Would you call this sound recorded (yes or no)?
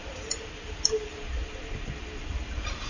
no